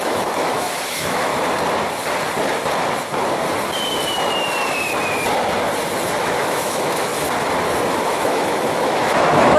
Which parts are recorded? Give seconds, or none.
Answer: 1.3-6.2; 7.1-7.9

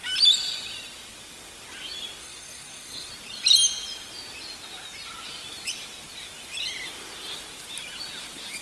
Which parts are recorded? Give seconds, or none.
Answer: 0.0-2.2; 3.1-8.6

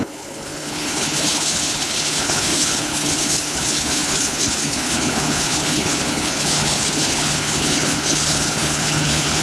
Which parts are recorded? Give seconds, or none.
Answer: none

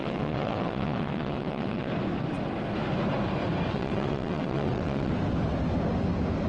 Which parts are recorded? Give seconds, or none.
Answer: 1.9-3.7; 5.1-6.5

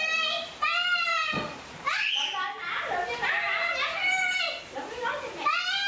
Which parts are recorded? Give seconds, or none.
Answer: 0.0-5.9

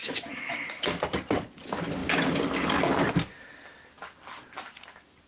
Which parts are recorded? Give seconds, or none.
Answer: 0.8-5.3